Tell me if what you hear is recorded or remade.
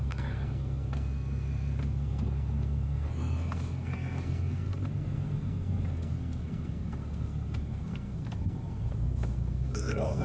remade